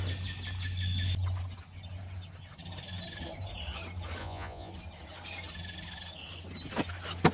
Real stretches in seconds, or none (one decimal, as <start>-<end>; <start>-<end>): 0.0-4.2; 4.7-7.3